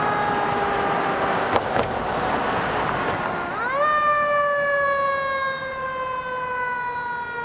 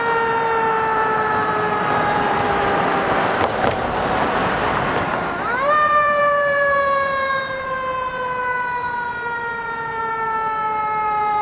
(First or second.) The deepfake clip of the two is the second